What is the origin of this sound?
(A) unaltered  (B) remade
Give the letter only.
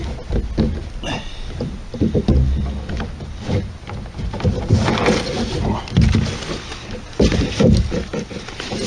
A